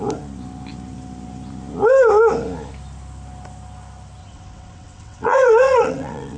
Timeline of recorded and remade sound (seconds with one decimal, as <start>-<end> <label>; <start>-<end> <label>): 0.0-4.2 recorded; 4.2-6.4 remade